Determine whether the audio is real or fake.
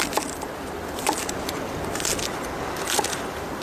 real